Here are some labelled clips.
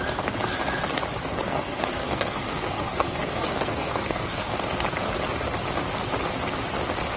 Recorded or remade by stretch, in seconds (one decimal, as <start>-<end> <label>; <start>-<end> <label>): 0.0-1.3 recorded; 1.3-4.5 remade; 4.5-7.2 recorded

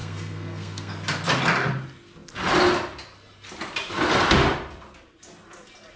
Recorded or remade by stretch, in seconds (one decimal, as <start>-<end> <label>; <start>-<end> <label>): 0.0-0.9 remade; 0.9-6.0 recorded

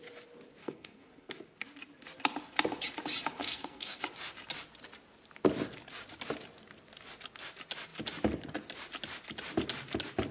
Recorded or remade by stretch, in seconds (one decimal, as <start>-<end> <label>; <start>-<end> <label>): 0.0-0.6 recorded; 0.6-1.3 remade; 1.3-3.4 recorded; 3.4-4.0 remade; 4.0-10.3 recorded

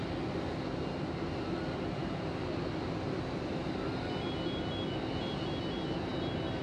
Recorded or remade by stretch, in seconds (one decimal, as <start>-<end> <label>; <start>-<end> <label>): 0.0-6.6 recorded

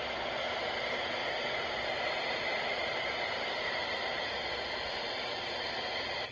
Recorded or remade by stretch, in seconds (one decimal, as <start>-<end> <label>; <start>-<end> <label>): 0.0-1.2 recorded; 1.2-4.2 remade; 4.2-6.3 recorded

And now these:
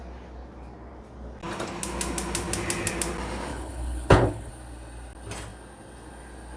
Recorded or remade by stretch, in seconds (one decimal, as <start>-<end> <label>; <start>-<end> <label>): 0.0-3.5 recorded; 3.5-4.5 remade; 4.5-6.6 recorded

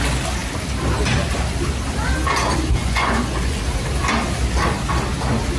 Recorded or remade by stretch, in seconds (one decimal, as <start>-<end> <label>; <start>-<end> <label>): 0.0-2.8 recorded; 2.8-3.6 remade; 3.6-5.6 recorded

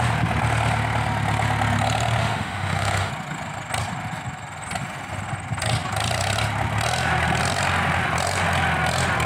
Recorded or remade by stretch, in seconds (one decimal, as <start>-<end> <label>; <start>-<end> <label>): 0.0-2.2 recorded; 2.2-3.1 remade; 3.1-9.3 recorded